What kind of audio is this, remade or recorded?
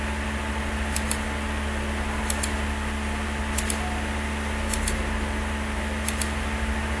recorded